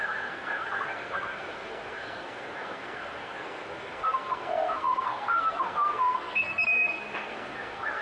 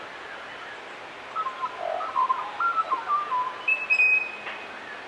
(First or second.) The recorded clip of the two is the second